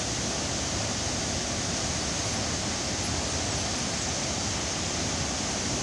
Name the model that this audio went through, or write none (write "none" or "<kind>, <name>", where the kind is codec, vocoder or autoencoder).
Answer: none